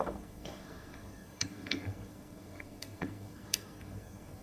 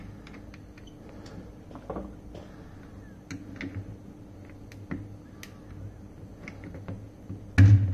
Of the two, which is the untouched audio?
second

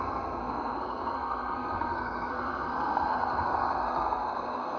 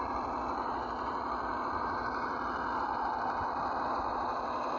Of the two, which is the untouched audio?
second